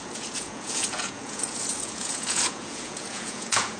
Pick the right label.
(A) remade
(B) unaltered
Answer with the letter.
A